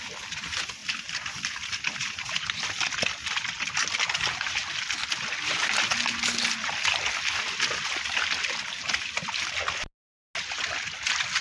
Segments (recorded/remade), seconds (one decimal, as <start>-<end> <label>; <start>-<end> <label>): 0.0-11.4 recorded